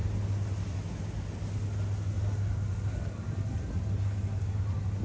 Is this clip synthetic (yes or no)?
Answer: no